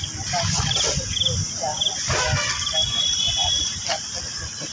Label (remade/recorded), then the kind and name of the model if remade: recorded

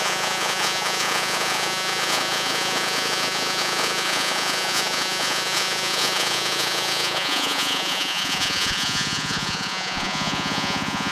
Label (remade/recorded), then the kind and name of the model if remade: remade, vocoder, Vocos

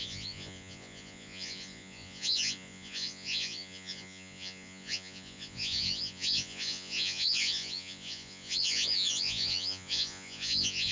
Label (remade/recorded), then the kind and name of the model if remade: remade, vocoder, Vocos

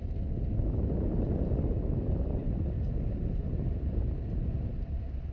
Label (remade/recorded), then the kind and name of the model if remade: recorded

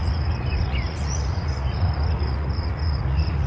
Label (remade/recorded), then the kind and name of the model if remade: remade, vocoder, Vocos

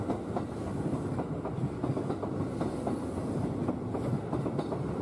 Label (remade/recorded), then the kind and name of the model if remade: recorded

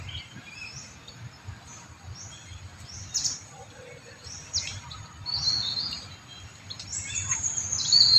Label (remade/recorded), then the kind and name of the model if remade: recorded